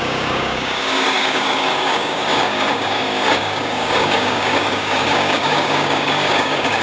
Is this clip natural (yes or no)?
no